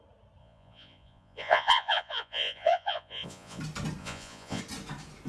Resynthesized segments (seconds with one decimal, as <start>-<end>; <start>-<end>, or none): 0.4-3.6; 4.0-4.6